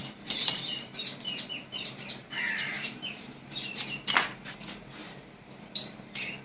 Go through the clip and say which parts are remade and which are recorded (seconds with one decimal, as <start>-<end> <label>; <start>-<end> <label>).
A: 0.0-3.8 remade; 3.8-5.0 recorded; 5.0-6.4 remade